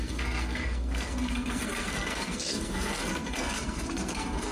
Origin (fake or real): fake